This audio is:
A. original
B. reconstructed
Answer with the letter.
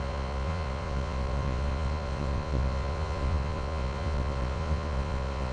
B